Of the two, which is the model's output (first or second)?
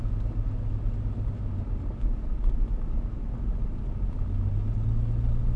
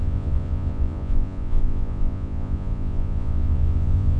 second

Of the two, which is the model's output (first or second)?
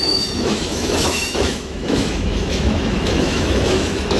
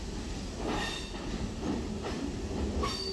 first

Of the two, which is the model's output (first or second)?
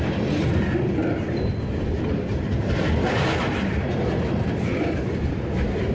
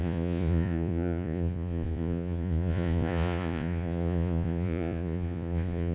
second